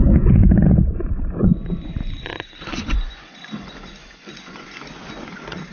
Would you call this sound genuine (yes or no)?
no